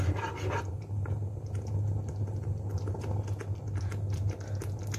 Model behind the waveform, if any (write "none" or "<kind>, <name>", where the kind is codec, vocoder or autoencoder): none